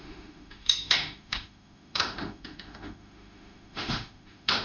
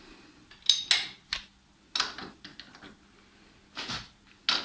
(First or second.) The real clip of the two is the second